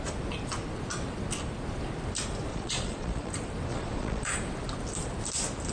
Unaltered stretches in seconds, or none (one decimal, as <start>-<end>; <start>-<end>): 0.0-2.5; 3.3-3.7; 4.3-5.7